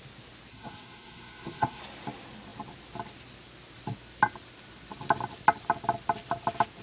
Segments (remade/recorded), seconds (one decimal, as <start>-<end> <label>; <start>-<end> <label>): 0.0-0.5 recorded; 0.5-1.8 remade; 1.8-6.8 recorded